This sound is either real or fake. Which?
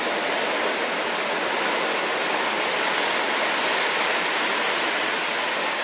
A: real